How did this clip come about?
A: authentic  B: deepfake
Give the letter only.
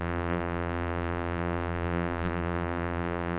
B